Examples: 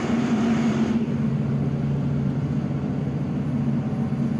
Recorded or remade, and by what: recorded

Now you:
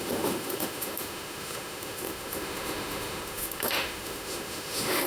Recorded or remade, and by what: remade, autoencoder, DAC-VAE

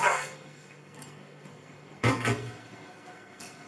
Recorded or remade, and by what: remade, codec, SNAC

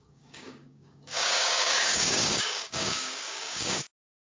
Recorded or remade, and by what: remade, codec, DAC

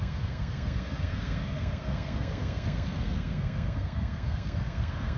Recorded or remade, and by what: remade, codec, SNAC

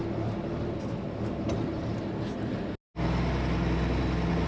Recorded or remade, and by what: recorded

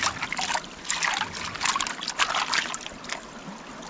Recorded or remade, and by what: recorded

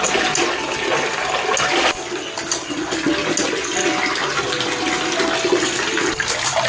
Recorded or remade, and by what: recorded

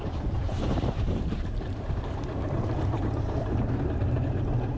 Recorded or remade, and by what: remade, vocoder, BigVGAN v2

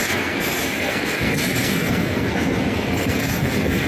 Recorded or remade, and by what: remade, codec, SNAC